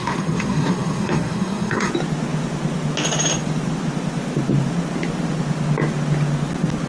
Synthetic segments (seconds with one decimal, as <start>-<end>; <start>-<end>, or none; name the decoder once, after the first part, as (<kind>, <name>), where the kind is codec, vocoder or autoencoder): 0.0-1.9 (codec, SNAC)